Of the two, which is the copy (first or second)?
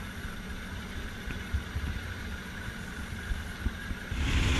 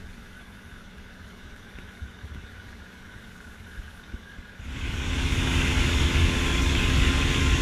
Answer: second